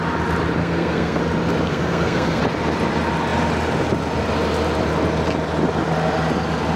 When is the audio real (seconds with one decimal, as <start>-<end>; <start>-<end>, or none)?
0.0-0.6; 1.2-1.7; 2.4-6.8